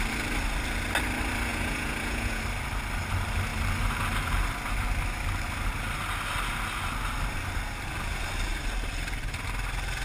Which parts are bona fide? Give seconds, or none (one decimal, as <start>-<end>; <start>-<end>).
0.0-1.5; 2.4-10.0